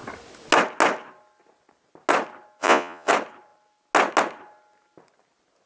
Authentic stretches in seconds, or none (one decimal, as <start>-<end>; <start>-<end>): 0.0-2.6; 3.1-5.7